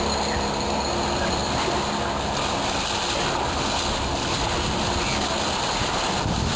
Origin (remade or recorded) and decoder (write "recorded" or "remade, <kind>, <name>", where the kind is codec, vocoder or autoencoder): recorded